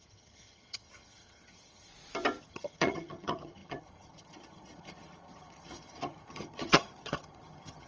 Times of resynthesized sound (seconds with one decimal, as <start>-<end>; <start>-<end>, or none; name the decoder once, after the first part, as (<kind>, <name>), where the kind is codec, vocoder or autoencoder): 0.0-1.9 (vocoder, HiFi-GAN); 2.4-7.9

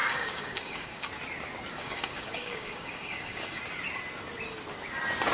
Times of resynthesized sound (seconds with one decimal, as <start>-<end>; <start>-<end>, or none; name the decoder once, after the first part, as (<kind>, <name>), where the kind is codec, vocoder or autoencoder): 0.0-1.1 (codec, DAC); 1.7-3.6